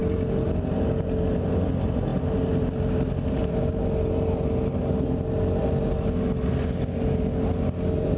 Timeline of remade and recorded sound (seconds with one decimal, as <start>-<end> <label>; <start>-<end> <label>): 0.0-8.2 recorded

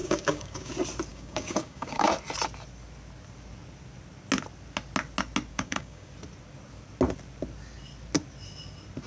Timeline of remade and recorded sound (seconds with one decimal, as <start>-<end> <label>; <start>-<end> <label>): 0.0-0.7 remade; 0.7-1.1 recorded; 1.1-2.1 remade; 2.1-5.5 recorded; 5.5-6.1 remade; 6.1-9.1 recorded

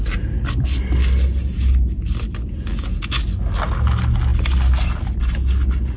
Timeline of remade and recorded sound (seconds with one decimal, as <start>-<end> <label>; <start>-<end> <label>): 0.0-6.0 recorded

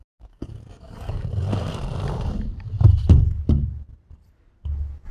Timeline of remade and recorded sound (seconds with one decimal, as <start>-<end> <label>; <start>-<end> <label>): 0.0-1.3 remade; 1.3-5.1 recorded